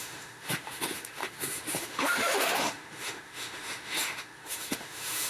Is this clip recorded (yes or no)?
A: no